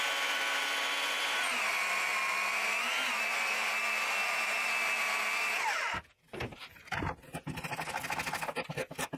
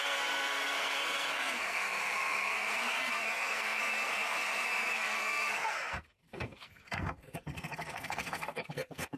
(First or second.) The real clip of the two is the first